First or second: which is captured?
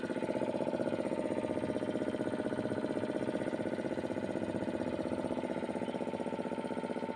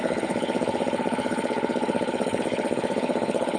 first